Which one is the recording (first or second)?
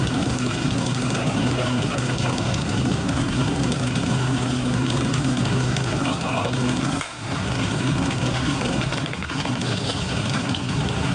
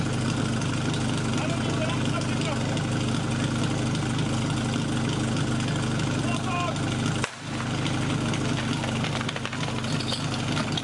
second